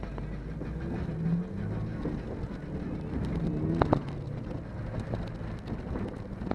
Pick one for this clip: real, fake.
real